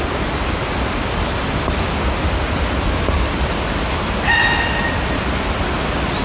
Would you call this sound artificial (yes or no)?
no